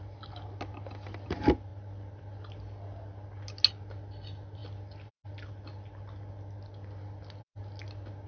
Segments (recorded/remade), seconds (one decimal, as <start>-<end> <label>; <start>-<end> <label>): 0.0-8.3 recorded